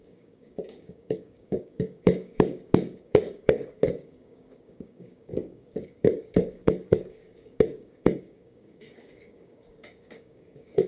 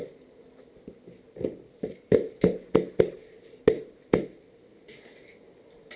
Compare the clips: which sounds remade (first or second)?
first